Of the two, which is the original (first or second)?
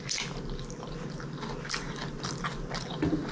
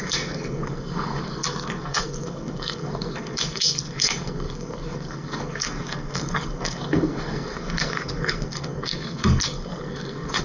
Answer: first